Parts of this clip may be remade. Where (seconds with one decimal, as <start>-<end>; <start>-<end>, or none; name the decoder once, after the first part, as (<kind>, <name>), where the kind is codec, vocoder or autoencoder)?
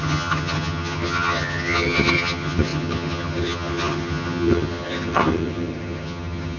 0.0-6.6 (vocoder, HiFi-GAN)